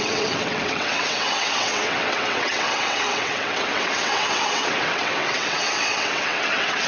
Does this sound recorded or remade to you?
remade